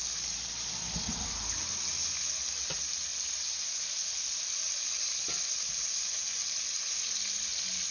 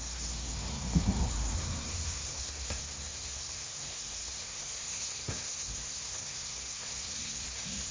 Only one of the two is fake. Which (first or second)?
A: second